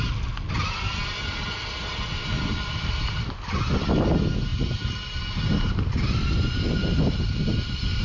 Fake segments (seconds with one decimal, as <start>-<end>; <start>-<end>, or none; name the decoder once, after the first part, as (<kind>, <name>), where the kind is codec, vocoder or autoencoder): none